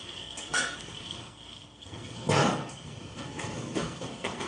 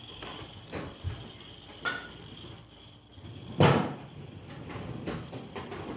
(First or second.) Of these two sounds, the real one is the second